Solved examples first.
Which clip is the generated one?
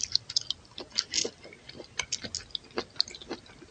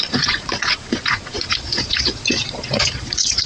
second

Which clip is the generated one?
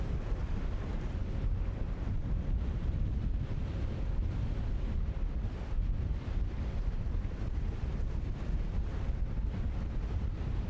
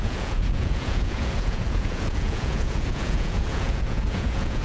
second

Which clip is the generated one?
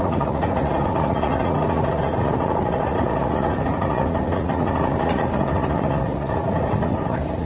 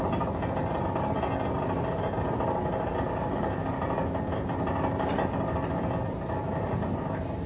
first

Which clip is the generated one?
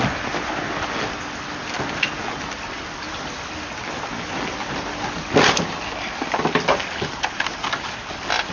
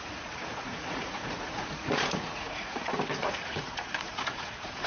second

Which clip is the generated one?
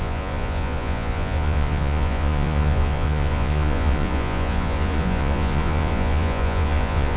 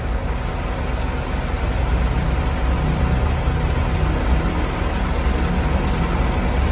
first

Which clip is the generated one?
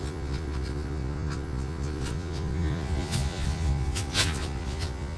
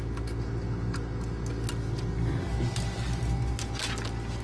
first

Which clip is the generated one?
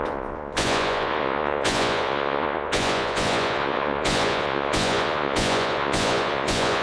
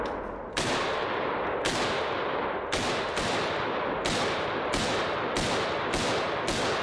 first